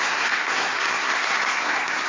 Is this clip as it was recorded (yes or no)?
no